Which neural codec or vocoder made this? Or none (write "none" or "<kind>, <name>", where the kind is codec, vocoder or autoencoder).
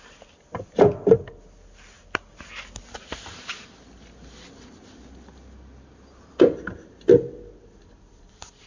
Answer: none